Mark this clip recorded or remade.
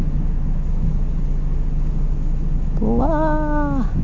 recorded